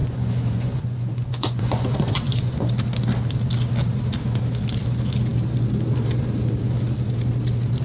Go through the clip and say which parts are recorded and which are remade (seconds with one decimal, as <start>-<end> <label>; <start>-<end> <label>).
0.0-2.7 remade; 2.7-7.8 recorded